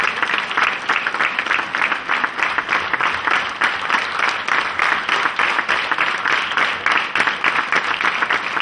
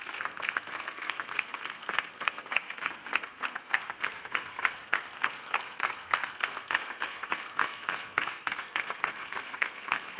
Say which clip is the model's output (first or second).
second